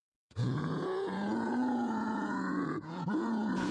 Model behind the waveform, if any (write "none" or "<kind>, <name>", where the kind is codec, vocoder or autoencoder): vocoder, Vocos